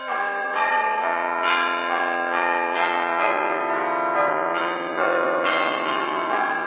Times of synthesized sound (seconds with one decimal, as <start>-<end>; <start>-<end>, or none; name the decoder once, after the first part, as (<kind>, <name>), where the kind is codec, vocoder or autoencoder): 0.0-3.6 (vocoder, Vocos); 4.3-6.7